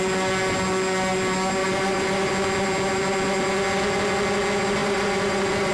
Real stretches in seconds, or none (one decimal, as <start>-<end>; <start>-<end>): 0.0-1.6; 2.3-4.8